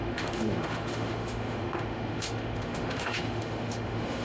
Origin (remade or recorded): remade